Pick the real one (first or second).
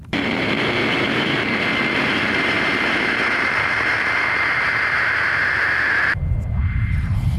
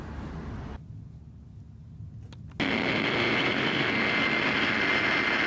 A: second